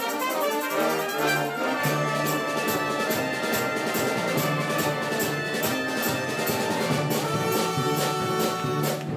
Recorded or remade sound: recorded